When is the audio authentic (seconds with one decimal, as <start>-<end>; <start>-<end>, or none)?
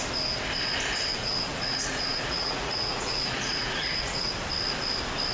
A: 0.0-1.1; 4.3-5.3